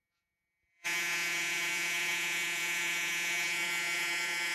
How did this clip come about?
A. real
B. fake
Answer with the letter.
B